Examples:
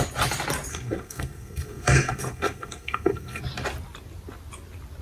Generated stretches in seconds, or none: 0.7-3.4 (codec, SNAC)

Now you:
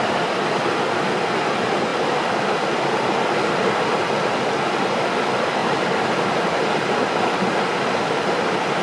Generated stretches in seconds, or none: 5.6-6.6 (vocoder, BigVGAN v2)

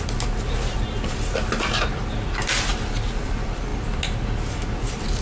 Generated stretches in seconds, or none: none

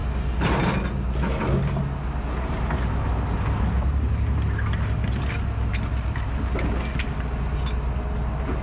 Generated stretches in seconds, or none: none

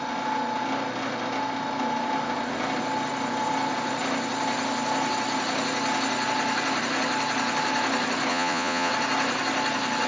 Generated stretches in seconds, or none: 8.3-8.9 (vocoder, Vocos)

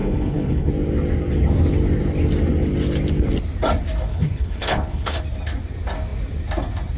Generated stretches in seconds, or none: 0.0-0.7 (codec, HILCodec); 4.1-5.2